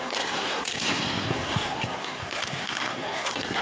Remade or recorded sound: remade